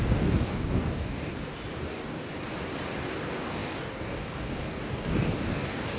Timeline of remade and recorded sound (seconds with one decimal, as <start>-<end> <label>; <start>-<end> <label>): 0.0-1.3 remade; 1.3-1.8 recorded; 1.8-2.3 remade; 2.3-3.2 recorded; 3.2-6.0 remade